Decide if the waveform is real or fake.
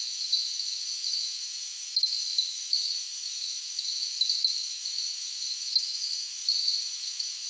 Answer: fake